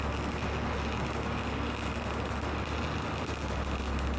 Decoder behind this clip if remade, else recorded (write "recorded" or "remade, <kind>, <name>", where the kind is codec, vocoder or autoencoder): recorded